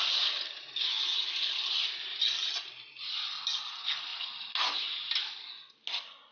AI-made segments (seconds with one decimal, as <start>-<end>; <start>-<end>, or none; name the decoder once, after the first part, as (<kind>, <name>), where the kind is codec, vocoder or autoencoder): none